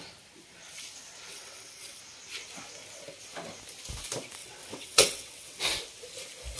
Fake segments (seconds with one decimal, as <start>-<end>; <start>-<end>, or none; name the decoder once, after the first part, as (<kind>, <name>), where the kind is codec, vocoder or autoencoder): 1.3-2.0 (vocoder, WaveNeXt); 4.4-5.6

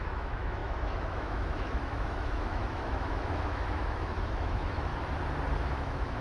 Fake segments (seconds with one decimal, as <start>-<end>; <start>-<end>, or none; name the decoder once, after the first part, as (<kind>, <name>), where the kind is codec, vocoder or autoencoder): 0.0-4.9 (autoencoder, DAC-VAE); 5.7-6.2

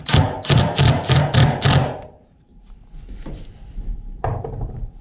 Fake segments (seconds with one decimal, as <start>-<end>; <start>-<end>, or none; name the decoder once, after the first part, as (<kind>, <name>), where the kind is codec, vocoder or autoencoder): 1.8-5.0 (vocoder, BigVGAN v2)

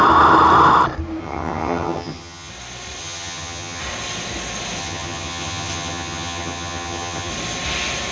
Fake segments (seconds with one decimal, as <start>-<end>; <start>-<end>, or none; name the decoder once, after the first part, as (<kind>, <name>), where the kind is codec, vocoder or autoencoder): 1.2-2.5 (vocoder, HiFi-GAN); 3.0-3.8; 4.8-7.3

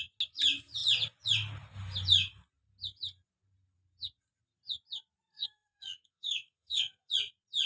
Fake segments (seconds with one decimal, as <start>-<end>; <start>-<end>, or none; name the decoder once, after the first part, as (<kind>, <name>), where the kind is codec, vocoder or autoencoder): 5.3-7.1 (codec, SNAC)

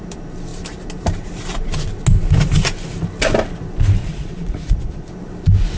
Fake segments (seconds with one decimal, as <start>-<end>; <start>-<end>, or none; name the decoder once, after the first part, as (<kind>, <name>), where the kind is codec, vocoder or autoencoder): 4.0-5.1 (vocoder, Vocos)

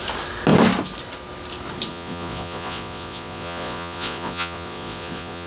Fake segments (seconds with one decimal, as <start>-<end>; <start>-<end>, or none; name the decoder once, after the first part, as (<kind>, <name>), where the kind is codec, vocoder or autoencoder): 1.9-5.5 (vocoder, Vocos)

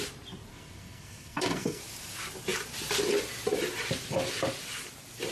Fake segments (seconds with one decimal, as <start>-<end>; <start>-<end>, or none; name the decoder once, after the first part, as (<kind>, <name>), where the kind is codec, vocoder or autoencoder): 0.5-1.8 (codec, SNAC)